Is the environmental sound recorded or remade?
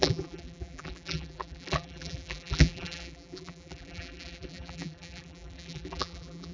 remade